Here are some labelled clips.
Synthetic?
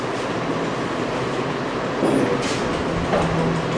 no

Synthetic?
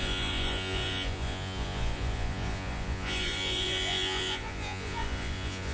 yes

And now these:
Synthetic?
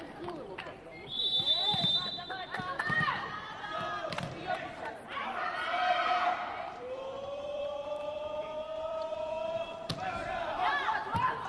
yes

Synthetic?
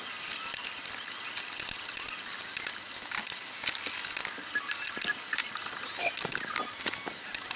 no